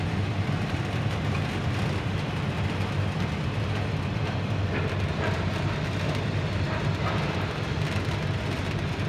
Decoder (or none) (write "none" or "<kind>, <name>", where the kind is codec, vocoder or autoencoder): none